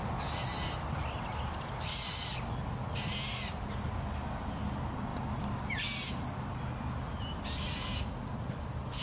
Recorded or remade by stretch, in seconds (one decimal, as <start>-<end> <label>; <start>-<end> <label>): 0.0-9.0 recorded

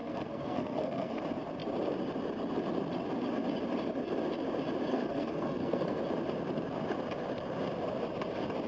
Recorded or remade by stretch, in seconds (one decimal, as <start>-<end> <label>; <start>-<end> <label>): 0.0-1.2 remade; 1.2-4.9 recorded; 4.9-6.0 remade; 6.0-8.7 recorded

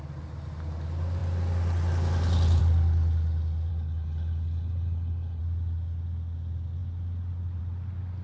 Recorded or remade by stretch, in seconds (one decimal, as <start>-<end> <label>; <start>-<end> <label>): 0.0-3.7 recorded; 3.7-5.4 remade; 5.4-8.2 recorded

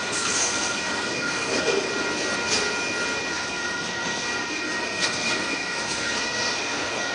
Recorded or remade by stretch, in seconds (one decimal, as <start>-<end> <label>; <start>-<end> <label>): 0.0-1.9 remade; 1.9-3.3 recorded; 3.3-7.1 remade

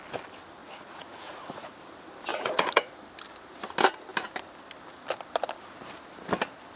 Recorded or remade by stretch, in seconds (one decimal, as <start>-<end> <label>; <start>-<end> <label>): 0.0-0.6 recorded; 0.6-1.7 remade; 1.7-2.3 recorded; 2.3-2.9 remade; 2.9-6.8 recorded